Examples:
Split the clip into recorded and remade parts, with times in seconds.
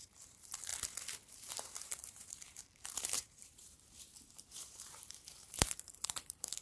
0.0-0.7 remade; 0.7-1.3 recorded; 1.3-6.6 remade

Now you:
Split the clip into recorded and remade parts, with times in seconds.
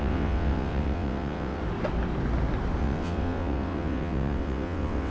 0.0-1.6 remade; 1.6-2.8 recorded; 2.8-5.1 remade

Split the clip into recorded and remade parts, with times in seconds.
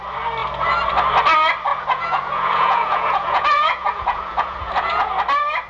0.0-1.7 recorded; 1.7-5.1 remade; 5.1-5.7 recorded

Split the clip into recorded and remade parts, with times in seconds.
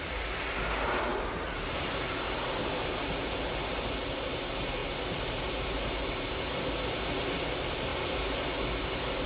0.0-9.3 recorded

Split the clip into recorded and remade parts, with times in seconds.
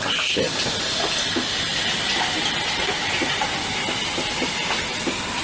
0.0-5.4 recorded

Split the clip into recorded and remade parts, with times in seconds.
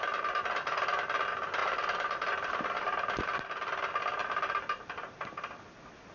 0.0-1.6 recorded; 1.6-3.2 remade; 3.2-4.2 recorded; 4.2-5.3 remade; 5.3-6.1 recorded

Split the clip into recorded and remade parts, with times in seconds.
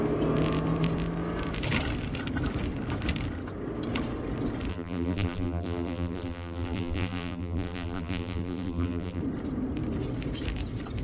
0.0-4.7 recorded; 4.7-9.2 remade; 9.2-11.0 recorded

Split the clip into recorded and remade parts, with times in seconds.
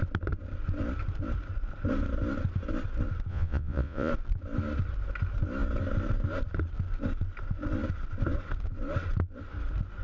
0.0-3.3 recorded; 3.3-4.1 remade; 4.1-10.0 recorded